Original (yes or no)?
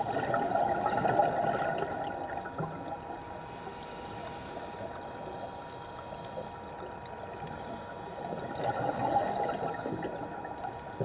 yes